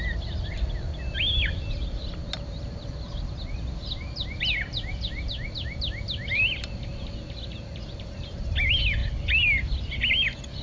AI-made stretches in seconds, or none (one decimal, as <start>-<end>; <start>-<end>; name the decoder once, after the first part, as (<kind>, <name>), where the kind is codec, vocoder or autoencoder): none